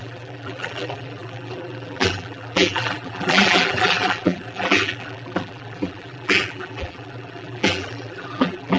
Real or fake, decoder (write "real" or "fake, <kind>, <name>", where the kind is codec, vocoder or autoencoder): fake, vocoder, BigVGAN v2